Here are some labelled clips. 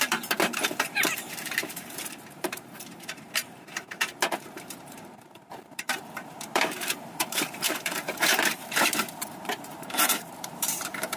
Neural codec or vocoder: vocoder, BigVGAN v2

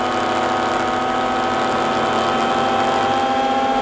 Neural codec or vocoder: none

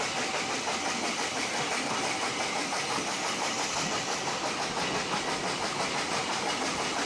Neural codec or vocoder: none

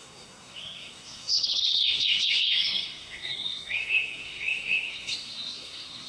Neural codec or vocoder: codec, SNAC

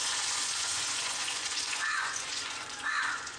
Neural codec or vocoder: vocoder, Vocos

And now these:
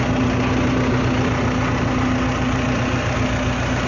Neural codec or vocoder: none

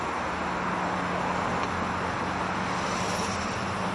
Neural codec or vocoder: none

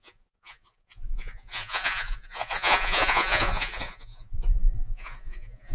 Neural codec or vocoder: vocoder, Vocos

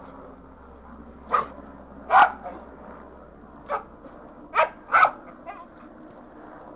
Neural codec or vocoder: none